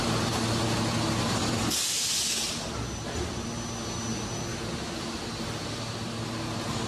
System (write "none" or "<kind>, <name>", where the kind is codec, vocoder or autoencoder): none